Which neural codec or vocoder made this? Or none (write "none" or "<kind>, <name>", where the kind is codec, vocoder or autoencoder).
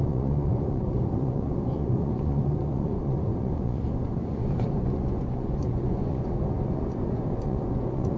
vocoder, Vocos